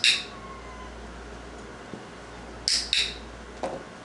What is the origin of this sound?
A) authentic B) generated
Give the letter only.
A